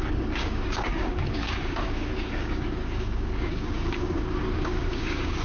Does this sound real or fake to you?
fake